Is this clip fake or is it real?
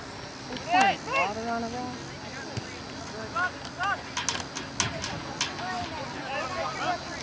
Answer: real